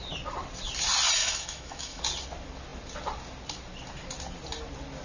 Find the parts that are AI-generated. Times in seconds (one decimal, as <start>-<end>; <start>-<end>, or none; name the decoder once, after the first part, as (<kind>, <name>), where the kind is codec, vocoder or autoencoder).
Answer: 1.2-2.0 (autoencoder, DAC-VAE)